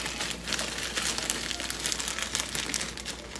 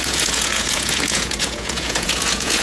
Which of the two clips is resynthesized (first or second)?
second